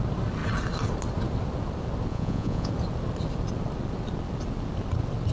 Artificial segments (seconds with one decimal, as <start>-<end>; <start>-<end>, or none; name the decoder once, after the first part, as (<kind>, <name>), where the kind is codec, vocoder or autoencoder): 2.1-2.7 (vocoder, Vocos)